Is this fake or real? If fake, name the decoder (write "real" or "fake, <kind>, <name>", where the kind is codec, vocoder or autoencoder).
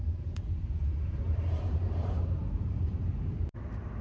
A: fake, vocoder, BigVGAN v2